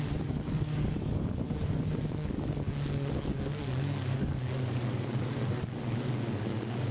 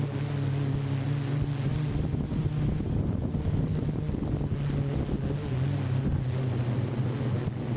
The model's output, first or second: first